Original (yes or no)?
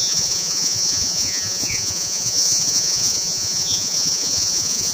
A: no